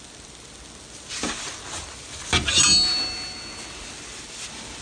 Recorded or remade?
recorded